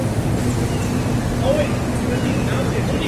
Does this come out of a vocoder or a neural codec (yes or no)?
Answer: no